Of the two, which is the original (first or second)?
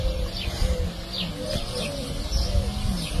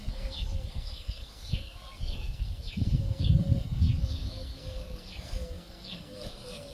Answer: first